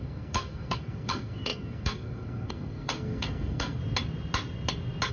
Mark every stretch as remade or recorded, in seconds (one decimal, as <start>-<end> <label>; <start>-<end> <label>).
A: 0.0-3.8 remade; 3.8-5.1 recorded